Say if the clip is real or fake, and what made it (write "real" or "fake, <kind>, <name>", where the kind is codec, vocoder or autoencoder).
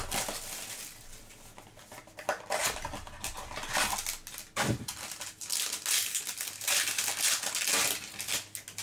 real